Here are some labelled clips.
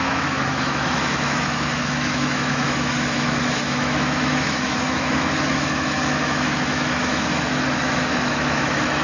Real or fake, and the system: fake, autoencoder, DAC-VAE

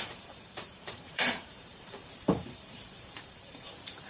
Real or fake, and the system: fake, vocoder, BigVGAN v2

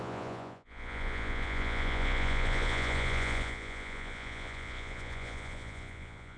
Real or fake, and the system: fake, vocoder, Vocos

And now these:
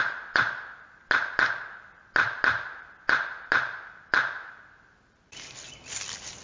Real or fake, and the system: real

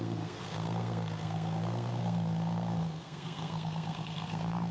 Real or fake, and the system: fake, codec, SNAC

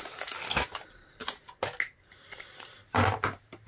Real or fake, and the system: real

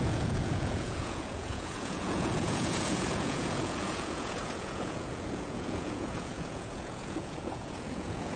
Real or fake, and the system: fake, vocoder, Vocos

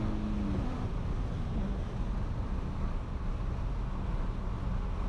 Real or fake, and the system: real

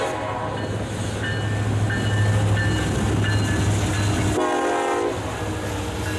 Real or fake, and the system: real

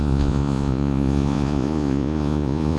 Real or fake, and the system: fake, vocoder, Vocos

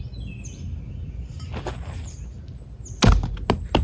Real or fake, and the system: real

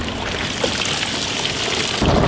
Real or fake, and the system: real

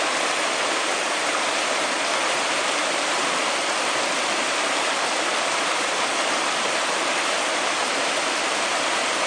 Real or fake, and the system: real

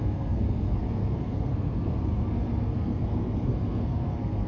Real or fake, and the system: fake, codec, SNAC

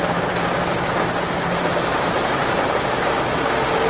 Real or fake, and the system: real